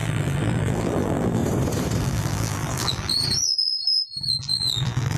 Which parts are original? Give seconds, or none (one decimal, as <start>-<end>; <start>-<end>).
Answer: 1.4-2.0; 3.1-3.7